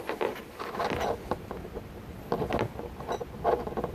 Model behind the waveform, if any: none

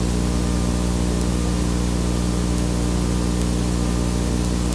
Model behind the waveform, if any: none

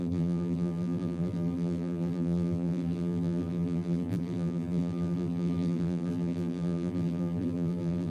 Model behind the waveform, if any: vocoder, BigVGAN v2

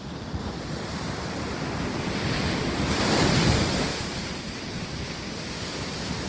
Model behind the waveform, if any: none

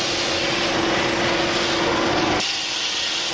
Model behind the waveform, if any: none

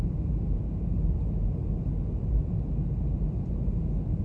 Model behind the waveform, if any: none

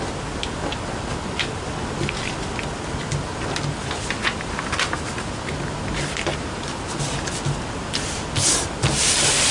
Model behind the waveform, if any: none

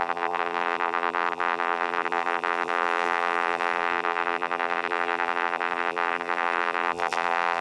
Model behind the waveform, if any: vocoder, BigVGAN v2